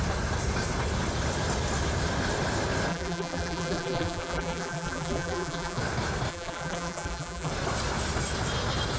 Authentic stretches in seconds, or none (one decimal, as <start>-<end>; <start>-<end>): 0.0-2.9; 5.8-6.3; 7.5-9.0